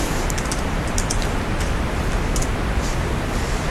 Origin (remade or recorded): remade